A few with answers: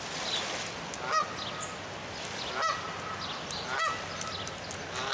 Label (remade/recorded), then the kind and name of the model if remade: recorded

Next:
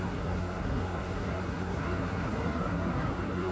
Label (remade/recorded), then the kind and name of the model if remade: remade, codec, SNAC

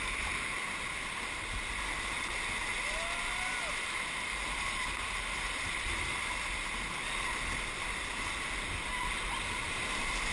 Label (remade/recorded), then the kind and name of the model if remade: recorded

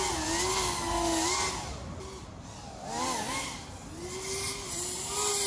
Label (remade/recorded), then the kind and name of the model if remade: recorded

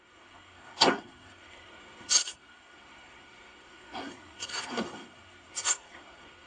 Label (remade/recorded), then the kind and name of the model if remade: remade, codec, SNAC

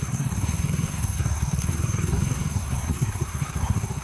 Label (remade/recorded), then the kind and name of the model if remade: remade, codec, SNAC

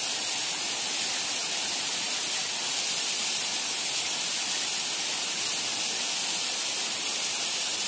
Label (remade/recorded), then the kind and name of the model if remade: recorded